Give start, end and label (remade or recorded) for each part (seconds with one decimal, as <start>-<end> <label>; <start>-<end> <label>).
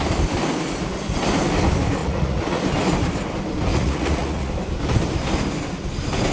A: 0.0-2.0 recorded; 2.0-2.6 remade; 2.6-3.7 recorded; 3.7-4.5 remade; 4.5-6.3 recorded